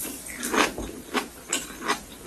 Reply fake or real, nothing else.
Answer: real